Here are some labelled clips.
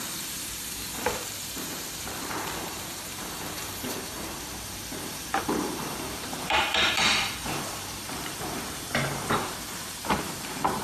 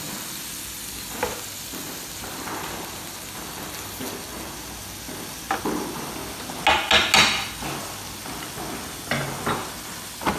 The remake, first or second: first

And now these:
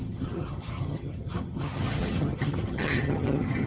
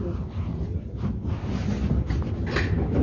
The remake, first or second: first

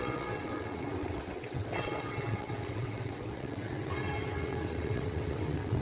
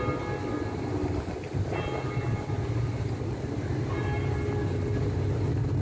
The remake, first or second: first